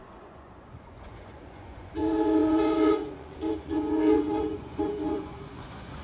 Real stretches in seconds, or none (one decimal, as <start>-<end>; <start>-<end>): none